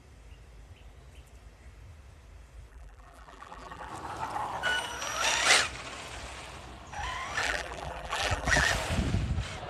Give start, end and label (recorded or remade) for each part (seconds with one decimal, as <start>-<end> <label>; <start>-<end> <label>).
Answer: 0.0-2.7 recorded; 2.7-3.9 remade; 3.9-7.4 recorded; 7.4-8.7 remade; 8.7-9.7 recorded